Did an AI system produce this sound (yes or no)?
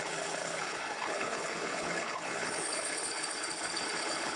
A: yes